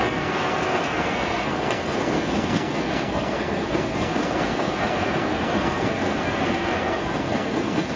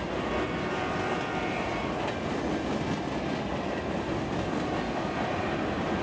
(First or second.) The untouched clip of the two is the second